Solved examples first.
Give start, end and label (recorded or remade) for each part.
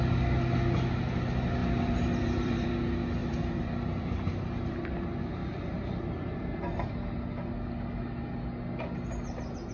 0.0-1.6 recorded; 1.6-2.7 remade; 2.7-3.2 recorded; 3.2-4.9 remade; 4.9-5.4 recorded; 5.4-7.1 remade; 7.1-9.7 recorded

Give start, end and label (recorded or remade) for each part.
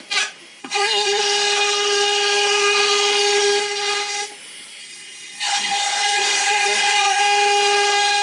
0.0-0.6 recorded; 0.6-1.2 remade; 1.2-4.8 recorded; 4.8-7.2 remade; 7.2-8.2 recorded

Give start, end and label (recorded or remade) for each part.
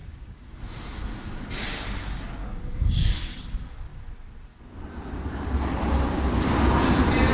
0.0-0.6 remade; 0.6-2.4 recorded; 2.4-3.2 remade; 3.2-7.3 recorded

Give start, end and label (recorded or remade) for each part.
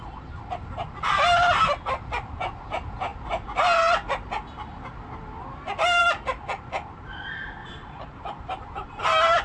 0.0-7.6 recorded; 7.6-9.0 remade; 9.0-9.4 recorded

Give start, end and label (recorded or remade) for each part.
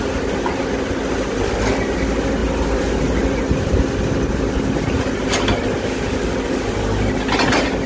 0.0-7.9 recorded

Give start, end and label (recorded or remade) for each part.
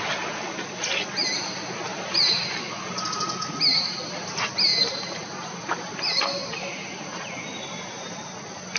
0.0-1.9 recorded; 1.9-2.4 remade; 2.4-4.7 recorded; 4.7-7.3 remade; 7.3-8.8 recorded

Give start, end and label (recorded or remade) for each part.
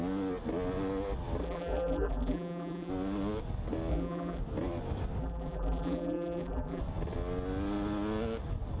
0.0-1.4 recorded; 1.4-2.9 remade; 2.9-3.9 recorded; 3.9-4.4 remade; 4.4-5.2 recorded; 5.2-6.8 remade; 6.8-8.8 recorded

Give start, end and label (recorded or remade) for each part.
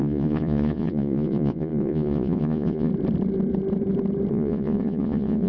0.0-2.9 remade; 2.9-4.3 recorded; 4.3-5.5 remade